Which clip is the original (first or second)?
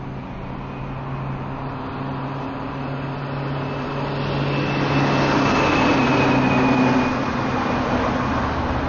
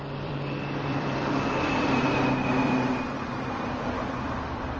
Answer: first